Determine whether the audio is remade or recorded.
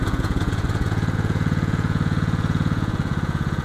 remade